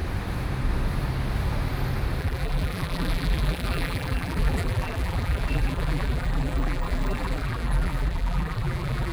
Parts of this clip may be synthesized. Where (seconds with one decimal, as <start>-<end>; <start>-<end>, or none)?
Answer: 2.2-9.1